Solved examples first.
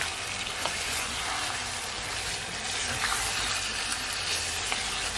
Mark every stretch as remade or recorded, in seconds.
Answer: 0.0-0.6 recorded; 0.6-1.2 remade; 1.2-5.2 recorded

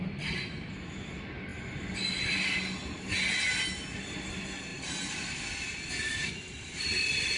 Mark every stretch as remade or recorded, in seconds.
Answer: 0.0-7.4 recorded

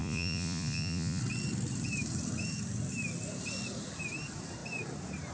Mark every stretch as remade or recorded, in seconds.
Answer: 0.0-1.2 remade; 1.2-5.3 recorded

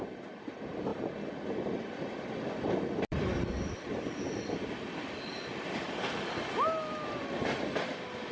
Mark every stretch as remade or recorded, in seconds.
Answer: 0.0-8.3 recorded

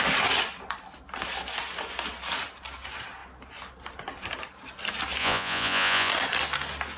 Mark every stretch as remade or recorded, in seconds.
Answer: 0.0-5.2 recorded; 5.2-6.1 remade; 6.1-7.0 recorded

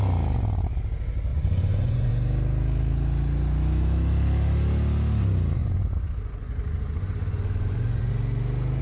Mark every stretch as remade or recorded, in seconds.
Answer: 0.0-1.3 recorded; 1.3-2.1 remade; 2.1-5.6 recorded; 5.6-8.1 remade; 8.1-8.8 recorded

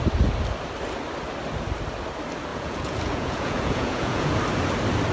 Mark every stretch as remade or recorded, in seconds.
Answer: 0.0-2.5 recorded; 2.5-4.3 remade; 4.3-5.1 recorded